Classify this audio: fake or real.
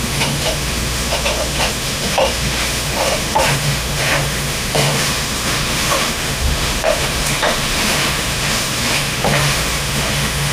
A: fake